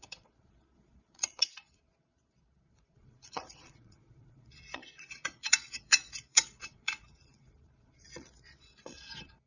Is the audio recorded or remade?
remade